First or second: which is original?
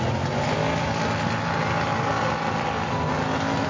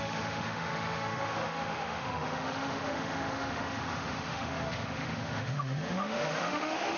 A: first